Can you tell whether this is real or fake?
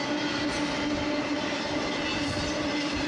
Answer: real